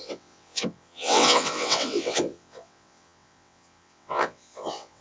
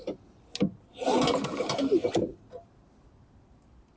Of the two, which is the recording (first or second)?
second